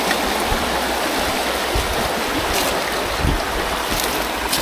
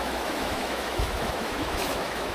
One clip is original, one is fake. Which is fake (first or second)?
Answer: second